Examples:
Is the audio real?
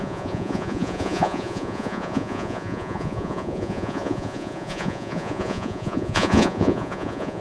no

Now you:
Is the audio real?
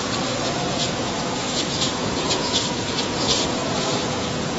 no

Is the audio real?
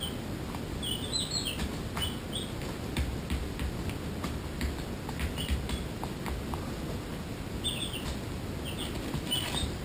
yes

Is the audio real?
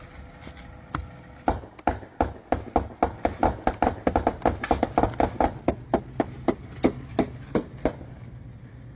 yes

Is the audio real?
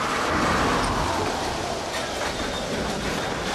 yes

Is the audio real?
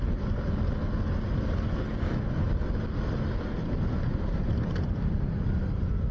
yes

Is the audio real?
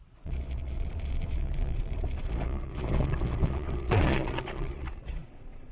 no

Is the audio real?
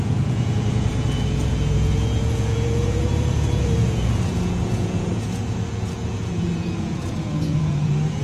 no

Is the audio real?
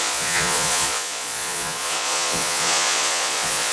no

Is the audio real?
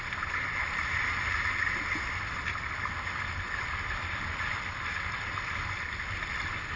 yes